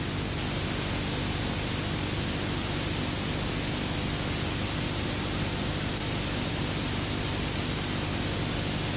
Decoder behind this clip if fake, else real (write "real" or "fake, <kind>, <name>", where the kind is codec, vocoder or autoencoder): real